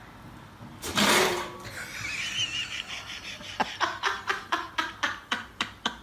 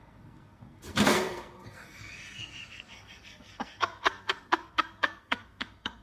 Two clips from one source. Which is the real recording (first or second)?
first